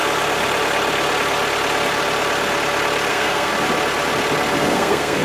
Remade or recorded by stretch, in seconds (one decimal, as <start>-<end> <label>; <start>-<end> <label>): 0.0-3.1 recorded; 3.1-3.5 remade; 3.5-4.6 recorded; 4.6-5.2 remade